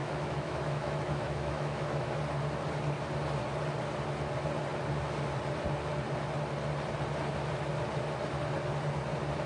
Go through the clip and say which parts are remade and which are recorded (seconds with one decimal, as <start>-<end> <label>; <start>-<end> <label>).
0.0-2.2 remade; 2.2-9.5 recorded